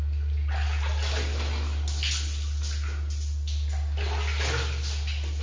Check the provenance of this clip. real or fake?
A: real